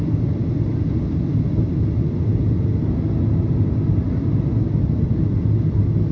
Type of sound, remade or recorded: recorded